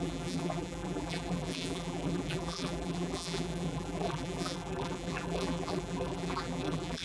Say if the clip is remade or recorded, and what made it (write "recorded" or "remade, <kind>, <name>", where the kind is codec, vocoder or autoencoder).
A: remade, vocoder, BigVGAN v2